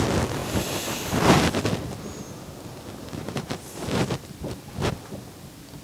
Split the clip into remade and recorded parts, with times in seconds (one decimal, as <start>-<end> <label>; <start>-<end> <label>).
0.0-3.2 recorded; 3.2-3.8 remade; 3.8-5.8 recorded